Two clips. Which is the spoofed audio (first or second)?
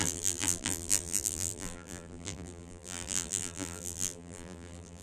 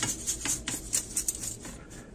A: first